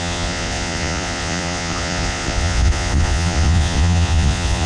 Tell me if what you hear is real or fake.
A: fake